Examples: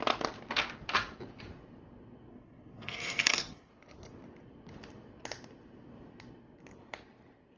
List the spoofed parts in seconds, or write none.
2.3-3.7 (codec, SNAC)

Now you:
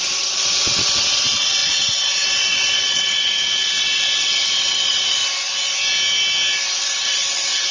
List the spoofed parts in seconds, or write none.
0.0-5.2 (vocoder, WaveNeXt); 6.8-7.7

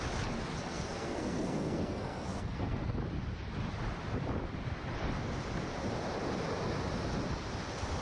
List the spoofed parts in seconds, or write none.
0.7-3.0 (codec, SNAC)

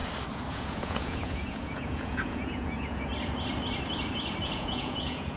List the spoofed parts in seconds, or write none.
0.5-3.1 (vocoder, Vocos); 4.4-5.4

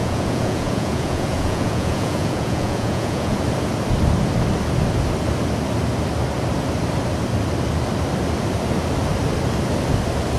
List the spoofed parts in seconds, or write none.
0.0-3.4 (vocoder, Vocos)

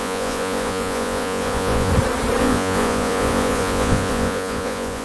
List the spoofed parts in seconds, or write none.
0.0-1.9 (vocoder, Vocos); 2.4-5.0

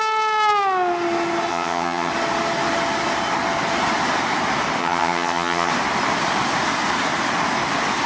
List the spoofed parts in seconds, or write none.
1.5-2.1 (vocoder, HiFi-GAN); 4.8-5.7

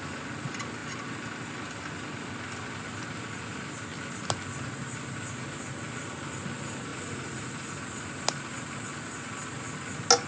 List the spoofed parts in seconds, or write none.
6.9-7.8 (vocoder, Vocos)